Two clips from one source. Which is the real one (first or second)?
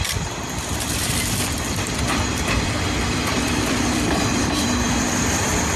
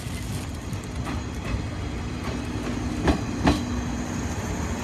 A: second